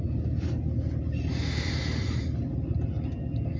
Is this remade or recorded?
recorded